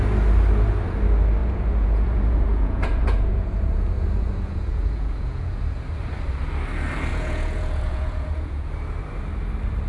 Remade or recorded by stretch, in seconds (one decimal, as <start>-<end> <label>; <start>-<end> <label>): 0.0-1.4 recorded; 1.4-5.8 remade; 5.8-7.1 recorded; 7.1-8.7 remade; 8.7-9.9 recorded